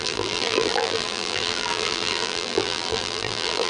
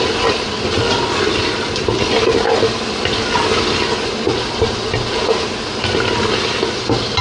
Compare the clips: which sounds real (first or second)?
second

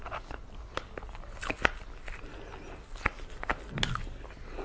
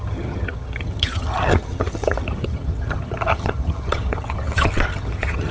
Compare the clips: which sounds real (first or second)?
first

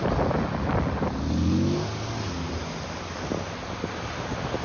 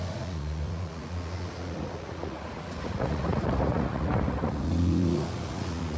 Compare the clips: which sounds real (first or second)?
first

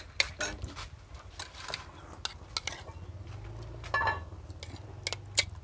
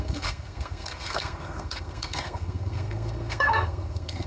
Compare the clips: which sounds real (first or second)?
first